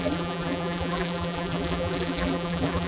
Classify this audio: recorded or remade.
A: remade